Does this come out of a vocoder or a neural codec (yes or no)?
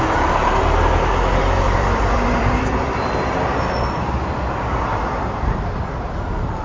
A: yes